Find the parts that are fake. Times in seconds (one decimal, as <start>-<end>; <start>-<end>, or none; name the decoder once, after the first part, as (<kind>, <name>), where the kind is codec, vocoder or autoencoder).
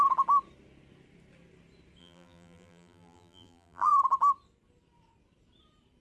2.0-3.9 (vocoder, BigVGAN v2)